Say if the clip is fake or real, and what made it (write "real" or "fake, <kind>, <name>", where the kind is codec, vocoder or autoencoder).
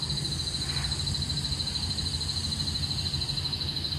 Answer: real